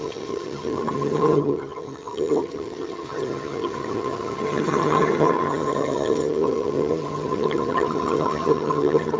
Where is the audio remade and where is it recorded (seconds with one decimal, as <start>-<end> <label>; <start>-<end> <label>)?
0.0-9.2 remade